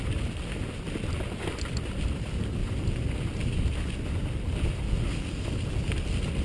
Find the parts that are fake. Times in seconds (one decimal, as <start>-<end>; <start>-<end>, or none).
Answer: none